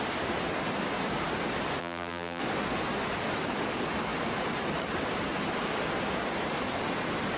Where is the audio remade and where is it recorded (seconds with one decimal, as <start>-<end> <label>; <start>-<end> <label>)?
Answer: 0.0-1.8 recorded; 1.8-2.4 remade; 2.4-7.4 recorded